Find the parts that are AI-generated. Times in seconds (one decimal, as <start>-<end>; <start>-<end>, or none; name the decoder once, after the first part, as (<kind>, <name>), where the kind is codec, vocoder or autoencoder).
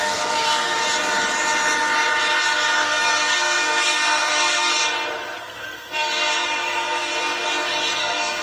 0.0-0.8 (codec, SNAC); 2.7-4.7; 5.4-7.1; 8.0-8.4